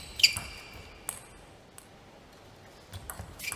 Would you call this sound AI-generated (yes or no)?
no